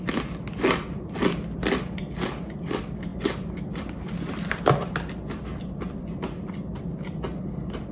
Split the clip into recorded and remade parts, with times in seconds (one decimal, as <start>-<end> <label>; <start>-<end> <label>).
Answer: 0.0-7.9 recorded